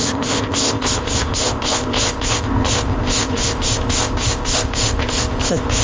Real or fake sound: fake